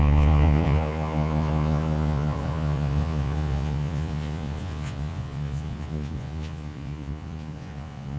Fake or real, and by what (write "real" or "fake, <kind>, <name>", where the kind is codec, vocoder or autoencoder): fake, vocoder, Vocos